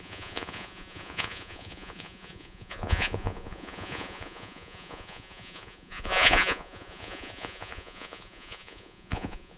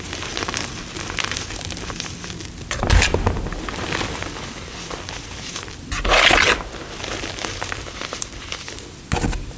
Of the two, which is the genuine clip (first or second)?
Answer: second